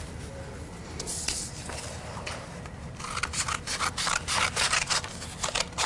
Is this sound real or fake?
real